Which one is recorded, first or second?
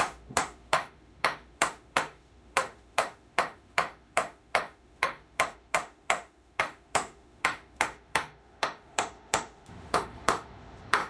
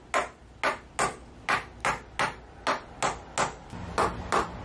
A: second